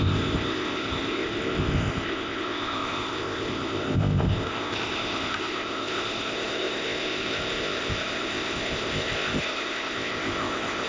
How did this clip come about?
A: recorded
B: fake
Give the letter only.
B